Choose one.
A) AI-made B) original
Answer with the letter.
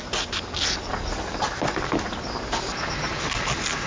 B